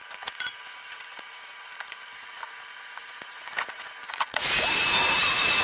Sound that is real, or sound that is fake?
fake